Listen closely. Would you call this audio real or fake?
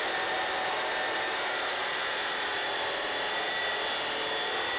real